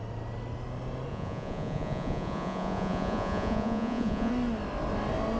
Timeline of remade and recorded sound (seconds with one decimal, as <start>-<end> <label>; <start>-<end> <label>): 0.0-1.1 recorded; 1.1-4.3 remade; 4.3-5.4 recorded